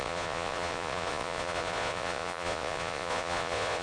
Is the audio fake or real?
fake